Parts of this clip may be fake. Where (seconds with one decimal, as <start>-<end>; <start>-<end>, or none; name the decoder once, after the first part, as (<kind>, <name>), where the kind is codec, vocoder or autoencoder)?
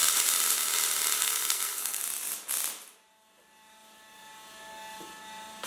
1.2-2.0 (codec, SNAC)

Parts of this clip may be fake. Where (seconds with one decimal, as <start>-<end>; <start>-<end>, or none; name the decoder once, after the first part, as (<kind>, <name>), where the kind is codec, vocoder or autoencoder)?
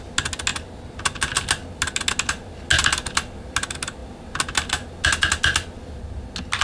none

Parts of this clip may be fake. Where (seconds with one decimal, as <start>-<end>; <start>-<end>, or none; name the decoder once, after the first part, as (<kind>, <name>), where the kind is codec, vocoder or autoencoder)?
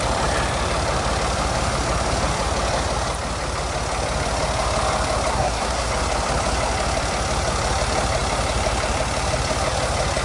5.3-5.9 (codec, SNAC)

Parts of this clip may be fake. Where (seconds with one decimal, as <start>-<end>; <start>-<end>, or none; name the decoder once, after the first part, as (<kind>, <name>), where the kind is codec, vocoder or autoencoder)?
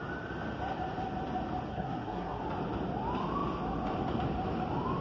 1.7-2.4 (codec, SNAC)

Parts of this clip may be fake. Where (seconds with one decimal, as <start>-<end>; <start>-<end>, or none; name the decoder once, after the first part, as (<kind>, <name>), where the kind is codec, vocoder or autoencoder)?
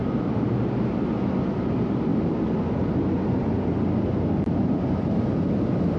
none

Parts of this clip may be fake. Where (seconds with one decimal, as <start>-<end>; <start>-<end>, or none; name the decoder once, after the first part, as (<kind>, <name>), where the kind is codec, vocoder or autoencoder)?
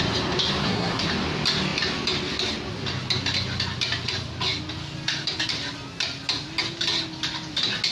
0.6-1.1 (codec, SNAC)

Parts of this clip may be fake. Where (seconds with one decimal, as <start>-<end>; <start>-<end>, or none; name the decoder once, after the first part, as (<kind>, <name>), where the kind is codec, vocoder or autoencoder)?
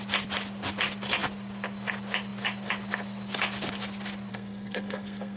4.3-5.4 (codec, SNAC)